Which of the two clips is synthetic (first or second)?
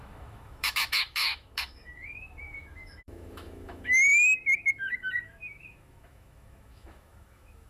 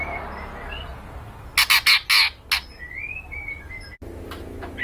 first